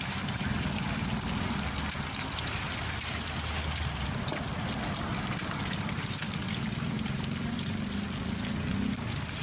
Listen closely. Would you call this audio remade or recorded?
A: recorded